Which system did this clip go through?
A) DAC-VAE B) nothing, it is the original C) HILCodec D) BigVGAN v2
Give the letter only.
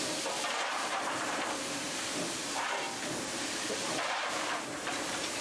D